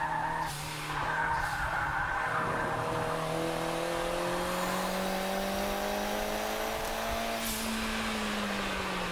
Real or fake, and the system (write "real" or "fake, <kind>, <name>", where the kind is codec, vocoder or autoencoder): real